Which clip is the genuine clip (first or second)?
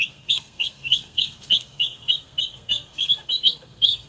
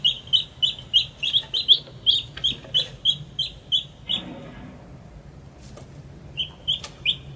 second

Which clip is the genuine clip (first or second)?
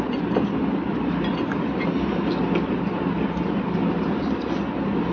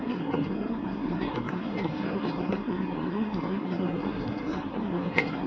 first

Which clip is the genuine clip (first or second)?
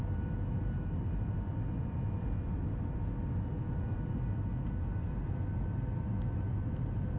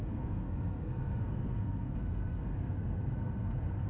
first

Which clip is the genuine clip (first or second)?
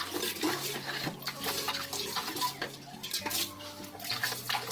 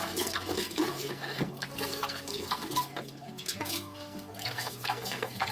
first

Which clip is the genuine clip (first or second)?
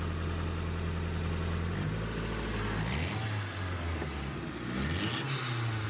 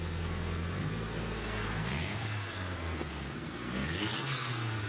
first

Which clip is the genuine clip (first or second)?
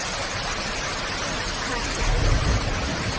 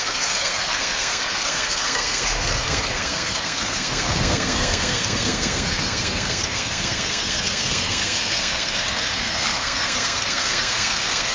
first